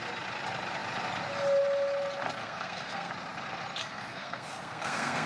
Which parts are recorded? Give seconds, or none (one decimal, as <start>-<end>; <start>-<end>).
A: 0.0-2.4; 3.1-3.8